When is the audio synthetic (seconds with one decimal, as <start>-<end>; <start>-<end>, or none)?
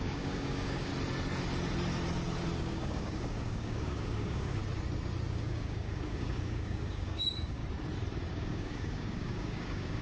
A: 0.0-0.9; 2.6-4.6; 5.3-7.6; 8.3-10.0